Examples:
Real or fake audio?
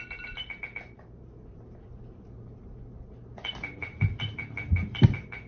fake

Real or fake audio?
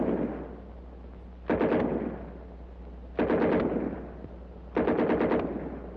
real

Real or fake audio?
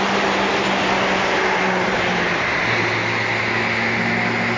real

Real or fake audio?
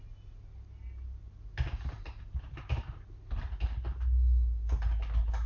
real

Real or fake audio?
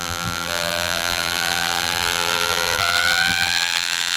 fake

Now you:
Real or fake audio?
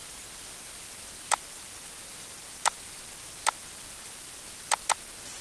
real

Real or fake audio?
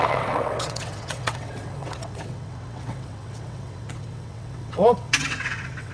fake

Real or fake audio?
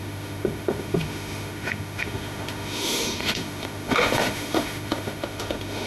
fake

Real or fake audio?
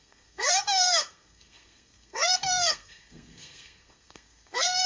fake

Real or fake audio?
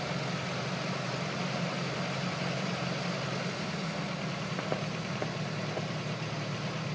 fake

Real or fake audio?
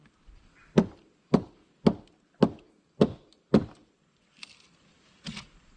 real